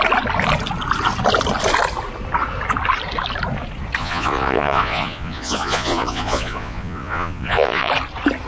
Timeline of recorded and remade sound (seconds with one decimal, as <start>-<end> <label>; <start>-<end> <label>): 0.0-4.0 recorded; 4.0-7.9 remade; 7.9-8.5 recorded